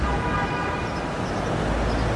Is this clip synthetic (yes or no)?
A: no